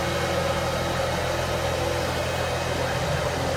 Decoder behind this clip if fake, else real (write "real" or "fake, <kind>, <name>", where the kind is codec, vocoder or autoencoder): real